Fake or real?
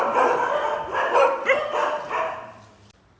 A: real